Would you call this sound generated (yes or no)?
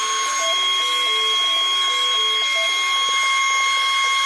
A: no